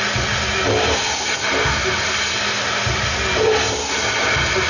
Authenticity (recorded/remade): recorded